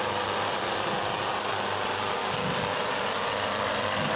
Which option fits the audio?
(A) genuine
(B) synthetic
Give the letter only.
A